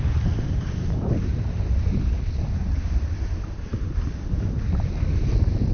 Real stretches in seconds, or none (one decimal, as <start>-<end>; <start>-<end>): 0.0-5.7